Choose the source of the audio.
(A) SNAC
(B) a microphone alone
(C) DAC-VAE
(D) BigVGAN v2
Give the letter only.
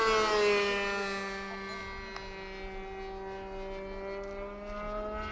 B